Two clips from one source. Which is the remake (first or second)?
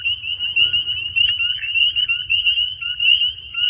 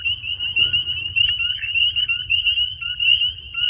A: second